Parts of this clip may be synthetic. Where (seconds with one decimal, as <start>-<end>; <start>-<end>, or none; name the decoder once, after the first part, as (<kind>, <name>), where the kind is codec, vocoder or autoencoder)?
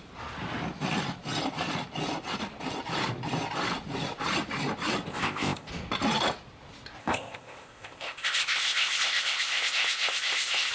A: 5.1-5.7 (codec, ZipCodec); 7.0-10.7